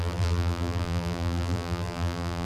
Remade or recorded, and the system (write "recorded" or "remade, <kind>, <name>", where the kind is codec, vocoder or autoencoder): remade, vocoder, BigVGAN v2